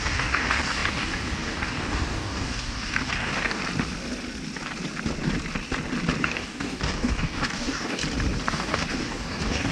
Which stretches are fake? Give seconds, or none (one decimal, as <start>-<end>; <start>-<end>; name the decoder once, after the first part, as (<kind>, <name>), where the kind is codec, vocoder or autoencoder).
0.0-3.6 (codec, DAC); 6.2-8.0; 8.5-9.7